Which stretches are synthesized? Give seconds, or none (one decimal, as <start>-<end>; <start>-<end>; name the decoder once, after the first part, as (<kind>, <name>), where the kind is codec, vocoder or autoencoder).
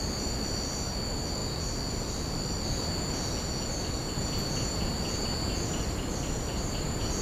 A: none